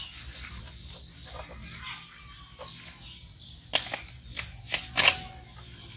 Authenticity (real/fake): real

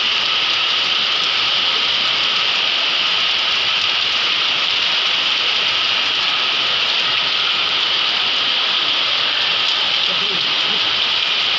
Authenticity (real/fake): real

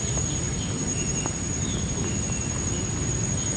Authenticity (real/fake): real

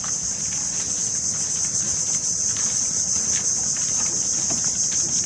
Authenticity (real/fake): real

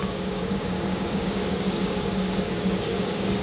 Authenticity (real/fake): fake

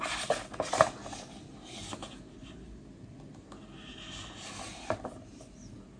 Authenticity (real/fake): real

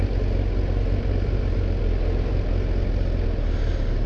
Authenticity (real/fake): real